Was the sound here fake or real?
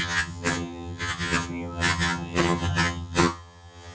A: fake